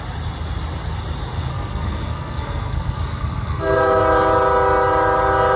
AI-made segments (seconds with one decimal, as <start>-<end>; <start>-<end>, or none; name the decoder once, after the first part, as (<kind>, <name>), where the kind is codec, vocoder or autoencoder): 1.5-4.0 (codec, SNAC)